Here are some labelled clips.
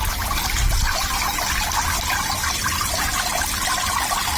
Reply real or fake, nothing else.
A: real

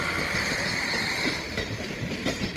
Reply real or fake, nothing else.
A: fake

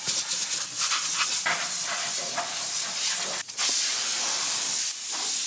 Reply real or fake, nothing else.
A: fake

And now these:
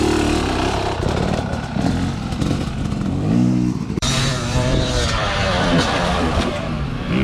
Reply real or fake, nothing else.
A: fake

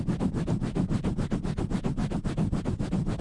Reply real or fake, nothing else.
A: real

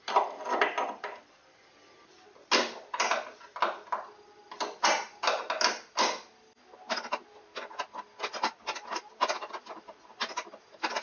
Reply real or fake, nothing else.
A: real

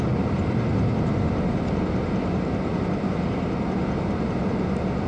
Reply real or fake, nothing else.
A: fake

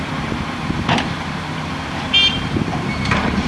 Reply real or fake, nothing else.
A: fake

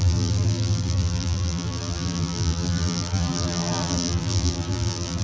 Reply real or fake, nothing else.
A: fake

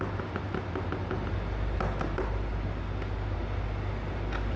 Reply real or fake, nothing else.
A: real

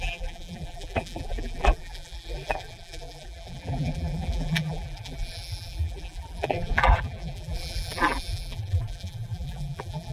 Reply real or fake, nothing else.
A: fake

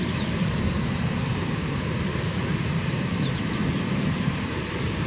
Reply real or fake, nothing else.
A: fake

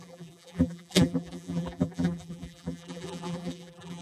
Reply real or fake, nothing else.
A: fake